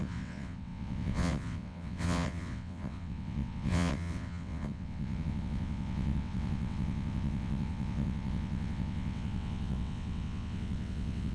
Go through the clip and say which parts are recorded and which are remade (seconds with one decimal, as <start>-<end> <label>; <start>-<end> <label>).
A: 0.0-11.3 remade